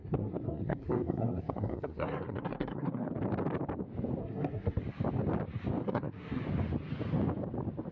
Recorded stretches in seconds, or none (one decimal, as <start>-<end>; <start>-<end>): 3.1-4.2; 4.8-5.8; 6.4-7.9